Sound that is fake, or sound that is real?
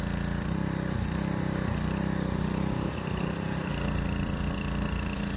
fake